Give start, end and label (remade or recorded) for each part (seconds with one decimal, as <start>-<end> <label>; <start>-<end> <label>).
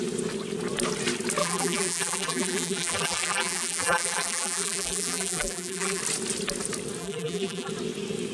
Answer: 0.0-1.4 recorded; 1.4-6.0 remade; 6.0-7.0 recorded; 7.0-7.7 remade; 7.7-8.3 recorded